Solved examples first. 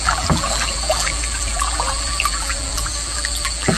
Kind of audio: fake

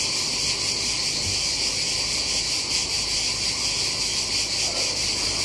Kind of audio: real